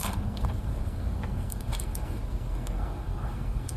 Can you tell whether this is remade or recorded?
remade